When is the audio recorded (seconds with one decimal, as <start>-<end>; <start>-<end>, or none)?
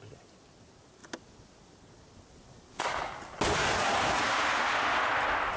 0.0-5.6